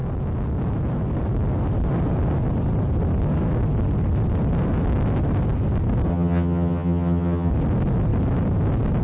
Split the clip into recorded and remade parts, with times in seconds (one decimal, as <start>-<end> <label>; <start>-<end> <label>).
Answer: 0.0-6.1 recorded; 6.1-7.5 remade; 7.5-9.0 recorded